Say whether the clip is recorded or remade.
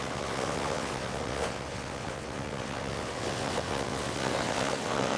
remade